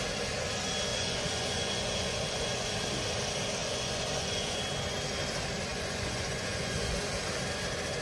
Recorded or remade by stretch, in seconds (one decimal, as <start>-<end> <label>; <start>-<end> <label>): 0.0-0.9 recorded; 0.9-2.7 remade; 2.7-3.6 recorded; 3.6-4.6 remade; 4.6-5.7 recorded; 5.7-7.0 remade; 7.0-8.0 recorded